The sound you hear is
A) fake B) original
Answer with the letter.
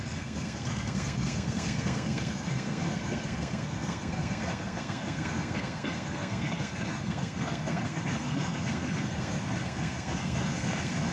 A